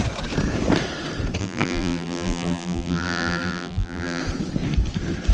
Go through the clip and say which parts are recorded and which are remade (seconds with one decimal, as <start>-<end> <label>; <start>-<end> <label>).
0.0-1.4 recorded; 1.4-4.2 remade; 4.2-5.3 recorded